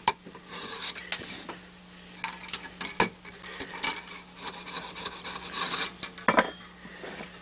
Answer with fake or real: real